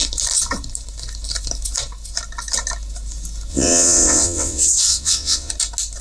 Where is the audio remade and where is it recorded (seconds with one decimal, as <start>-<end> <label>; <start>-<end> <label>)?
0.0-3.5 recorded; 3.5-5.5 remade; 5.5-6.0 recorded